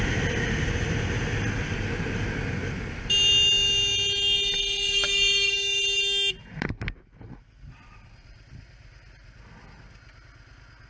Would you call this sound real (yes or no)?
yes